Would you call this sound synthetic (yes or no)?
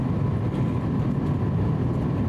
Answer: yes